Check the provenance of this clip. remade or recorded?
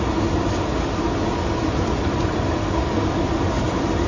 recorded